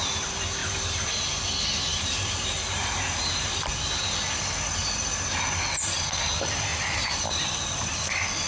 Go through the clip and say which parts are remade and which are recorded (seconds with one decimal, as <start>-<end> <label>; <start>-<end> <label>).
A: 0.0-0.6 recorded; 0.6-1.1 remade; 1.1-1.9 recorded; 1.9-3.6 remade; 3.6-6.7 recorded; 6.7-8.1 remade; 8.1-8.5 recorded